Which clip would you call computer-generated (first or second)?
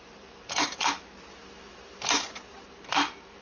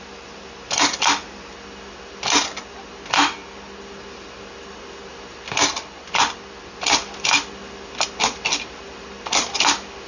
first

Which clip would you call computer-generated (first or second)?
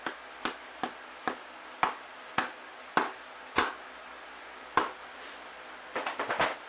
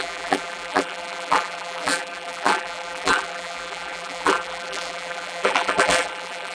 second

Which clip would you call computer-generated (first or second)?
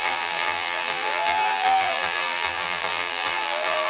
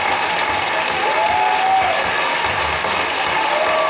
first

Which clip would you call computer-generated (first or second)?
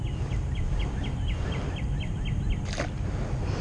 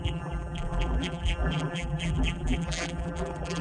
second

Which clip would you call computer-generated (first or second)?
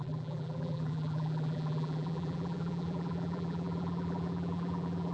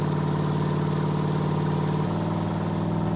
first